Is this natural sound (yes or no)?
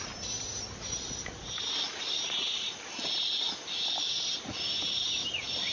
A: yes